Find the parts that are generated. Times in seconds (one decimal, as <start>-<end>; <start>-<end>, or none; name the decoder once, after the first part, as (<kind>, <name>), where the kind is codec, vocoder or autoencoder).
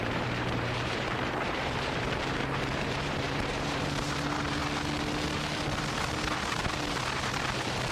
0.0-4.6 (vocoder, BigVGAN v2); 7.3-7.9